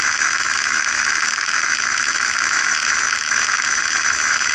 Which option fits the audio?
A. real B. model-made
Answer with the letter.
B